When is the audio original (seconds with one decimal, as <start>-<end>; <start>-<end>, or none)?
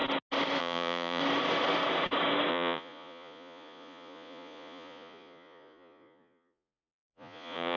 0.0-0.6; 1.2-2.5